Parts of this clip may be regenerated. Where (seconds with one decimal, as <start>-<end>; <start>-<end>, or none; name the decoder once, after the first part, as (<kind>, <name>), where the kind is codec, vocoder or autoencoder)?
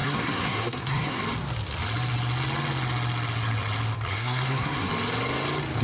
0.0-1.2 (codec, SNAC); 4.1-4.9